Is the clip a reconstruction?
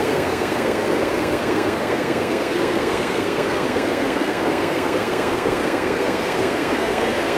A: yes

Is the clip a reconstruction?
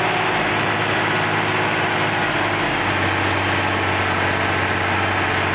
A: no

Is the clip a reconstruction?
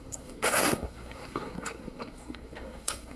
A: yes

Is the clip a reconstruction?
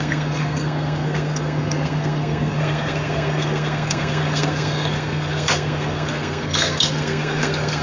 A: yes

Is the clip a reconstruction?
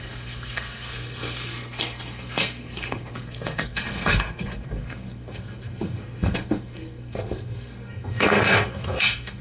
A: yes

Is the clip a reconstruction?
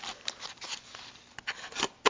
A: no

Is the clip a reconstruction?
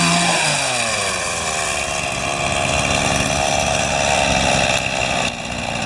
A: no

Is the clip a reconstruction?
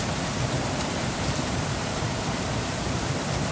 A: yes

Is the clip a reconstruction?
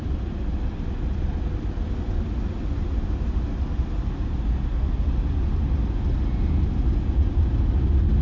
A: no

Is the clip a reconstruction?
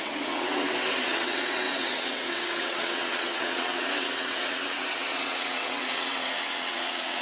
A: yes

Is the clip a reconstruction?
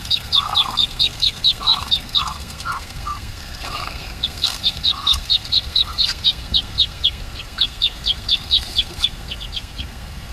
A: yes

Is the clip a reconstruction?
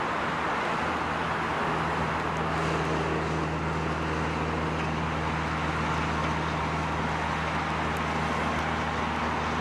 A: no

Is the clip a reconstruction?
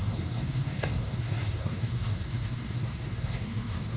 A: yes